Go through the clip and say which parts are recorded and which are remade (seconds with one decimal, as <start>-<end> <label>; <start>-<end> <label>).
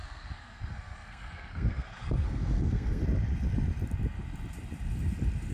0.0-3.0 remade; 3.0-5.5 recorded